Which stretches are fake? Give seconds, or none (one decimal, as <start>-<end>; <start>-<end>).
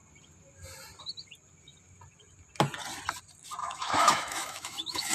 3.6-5.1